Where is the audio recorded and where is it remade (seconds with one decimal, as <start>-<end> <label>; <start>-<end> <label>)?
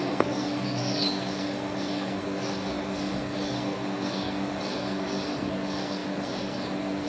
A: 0.0-7.1 remade